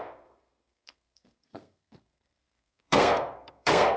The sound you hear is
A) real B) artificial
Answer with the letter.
B